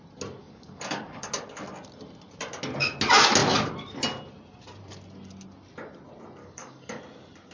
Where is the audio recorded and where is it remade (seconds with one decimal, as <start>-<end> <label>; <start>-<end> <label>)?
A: 0.0-0.4 recorded; 0.4-1.3 remade; 1.3-6.4 recorded; 6.4-7.0 remade; 7.0-7.5 recorded